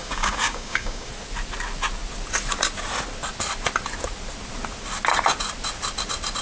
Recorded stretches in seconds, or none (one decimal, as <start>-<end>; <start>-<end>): 1.1-6.4